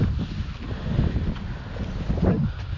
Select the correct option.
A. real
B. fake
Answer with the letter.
A